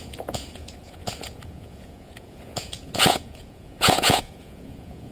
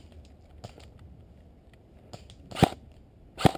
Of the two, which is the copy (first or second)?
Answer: first